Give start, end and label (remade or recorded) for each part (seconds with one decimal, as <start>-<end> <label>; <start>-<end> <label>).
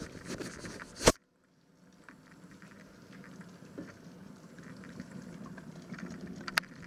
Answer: 0.0-6.9 recorded